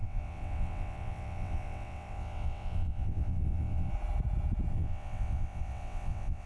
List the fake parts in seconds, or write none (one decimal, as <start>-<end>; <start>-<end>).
0.0-3.9; 4.7-6.5